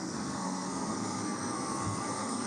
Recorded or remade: remade